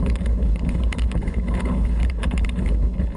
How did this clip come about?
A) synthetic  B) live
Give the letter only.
A